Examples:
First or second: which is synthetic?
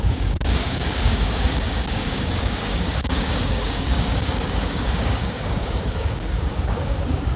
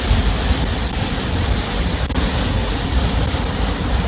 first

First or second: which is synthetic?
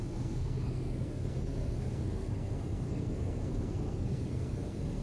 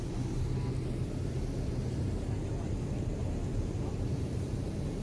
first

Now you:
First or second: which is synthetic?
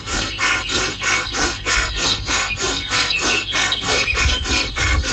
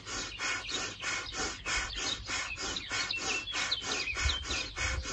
first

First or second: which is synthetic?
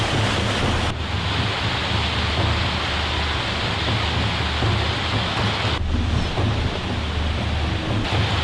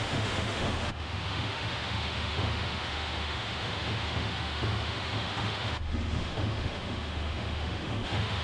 second